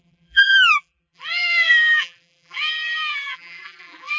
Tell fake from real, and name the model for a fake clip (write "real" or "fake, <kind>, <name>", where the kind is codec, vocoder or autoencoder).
fake, vocoder, BigVGAN v2